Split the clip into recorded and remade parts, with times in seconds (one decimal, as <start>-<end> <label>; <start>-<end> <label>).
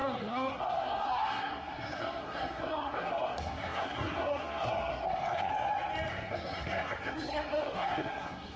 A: 0.0-5.5 remade; 5.5-6.1 recorded; 6.1-8.6 remade